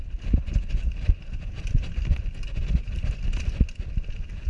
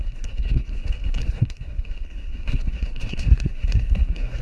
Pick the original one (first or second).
first